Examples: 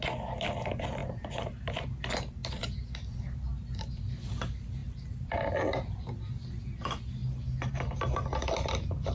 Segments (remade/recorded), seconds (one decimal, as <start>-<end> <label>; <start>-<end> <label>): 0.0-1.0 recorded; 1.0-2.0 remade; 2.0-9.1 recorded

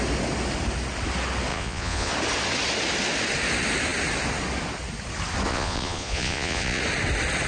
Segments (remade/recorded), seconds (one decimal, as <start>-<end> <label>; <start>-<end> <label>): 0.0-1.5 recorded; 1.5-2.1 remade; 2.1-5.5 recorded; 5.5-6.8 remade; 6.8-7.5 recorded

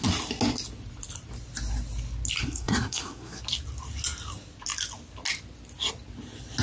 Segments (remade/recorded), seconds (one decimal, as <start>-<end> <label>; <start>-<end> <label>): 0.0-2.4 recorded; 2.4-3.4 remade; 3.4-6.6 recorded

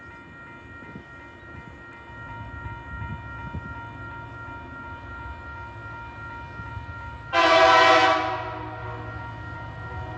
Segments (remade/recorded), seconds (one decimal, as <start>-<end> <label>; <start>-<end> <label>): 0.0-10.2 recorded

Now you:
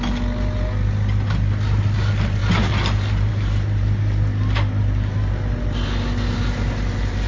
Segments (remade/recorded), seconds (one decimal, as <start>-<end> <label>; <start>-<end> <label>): 0.0-7.3 recorded

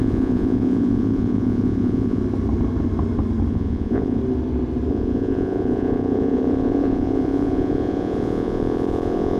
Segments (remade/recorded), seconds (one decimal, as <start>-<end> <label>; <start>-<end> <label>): 0.0-2.2 remade; 2.2-3.5 recorded; 3.5-4.2 remade; 4.2-4.9 recorded; 4.9-9.4 remade

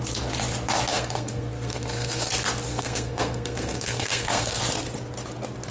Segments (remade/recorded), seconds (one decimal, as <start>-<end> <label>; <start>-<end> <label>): 0.0-0.9 recorded; 0.9-2.3 remade; 2.3-2.7 recorded; 2.7-4.6 remade; 4.6-5.7 recorded

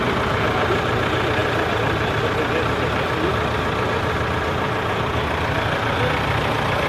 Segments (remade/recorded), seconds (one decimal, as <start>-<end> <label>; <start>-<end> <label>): 0.0-6.9 recorded